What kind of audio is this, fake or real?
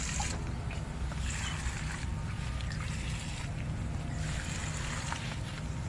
real